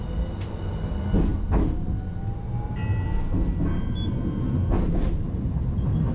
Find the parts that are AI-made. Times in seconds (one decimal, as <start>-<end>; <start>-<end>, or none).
none